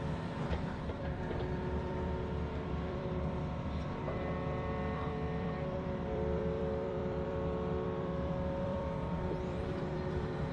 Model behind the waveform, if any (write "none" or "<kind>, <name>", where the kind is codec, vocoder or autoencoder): vocoder, BigVGAN v2